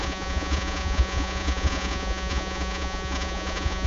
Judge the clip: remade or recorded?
remade